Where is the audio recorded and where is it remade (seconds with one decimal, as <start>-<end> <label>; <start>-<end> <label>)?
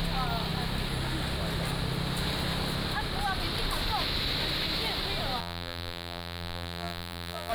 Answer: 0.0-5.4 recorded; 5.4-7.5 remade